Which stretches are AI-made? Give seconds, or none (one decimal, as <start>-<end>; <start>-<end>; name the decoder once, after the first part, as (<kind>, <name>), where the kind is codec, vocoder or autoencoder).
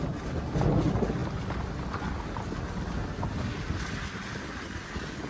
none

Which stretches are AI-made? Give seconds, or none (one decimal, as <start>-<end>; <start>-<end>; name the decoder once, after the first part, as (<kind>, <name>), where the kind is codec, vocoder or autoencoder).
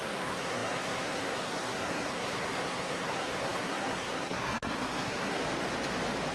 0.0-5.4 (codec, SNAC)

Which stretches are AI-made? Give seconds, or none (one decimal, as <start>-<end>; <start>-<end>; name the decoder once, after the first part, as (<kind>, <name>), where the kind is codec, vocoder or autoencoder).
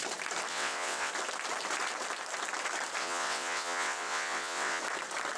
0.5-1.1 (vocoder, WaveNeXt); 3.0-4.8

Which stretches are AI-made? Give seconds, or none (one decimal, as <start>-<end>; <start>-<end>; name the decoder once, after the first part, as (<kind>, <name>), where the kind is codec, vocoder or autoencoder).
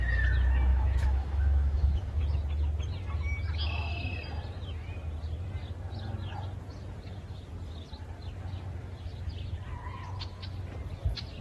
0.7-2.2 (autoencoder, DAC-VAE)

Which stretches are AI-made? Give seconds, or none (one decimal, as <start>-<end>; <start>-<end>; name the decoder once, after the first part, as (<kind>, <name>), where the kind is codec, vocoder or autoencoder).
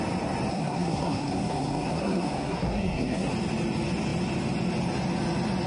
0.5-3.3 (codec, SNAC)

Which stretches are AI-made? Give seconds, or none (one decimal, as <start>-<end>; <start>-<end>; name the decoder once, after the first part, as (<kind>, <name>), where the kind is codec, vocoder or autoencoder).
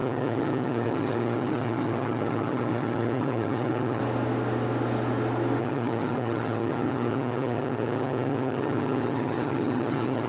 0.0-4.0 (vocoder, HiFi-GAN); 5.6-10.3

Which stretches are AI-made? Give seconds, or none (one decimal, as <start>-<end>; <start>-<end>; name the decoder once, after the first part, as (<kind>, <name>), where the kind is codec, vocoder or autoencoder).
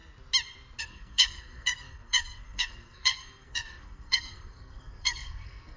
0.8-5.8 (codec, SNAC)